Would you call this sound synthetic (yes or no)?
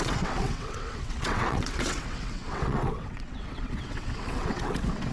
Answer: yes